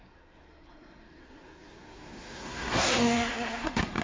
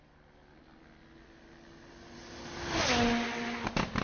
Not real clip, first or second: first